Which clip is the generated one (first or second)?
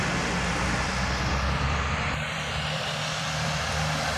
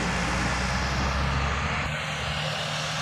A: first